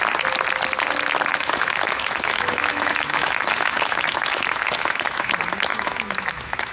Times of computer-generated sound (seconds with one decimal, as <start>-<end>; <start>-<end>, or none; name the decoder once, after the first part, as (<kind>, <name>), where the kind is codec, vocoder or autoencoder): 1.3-5.3 (autoencoder, DAC-VAE); 5.7-6.7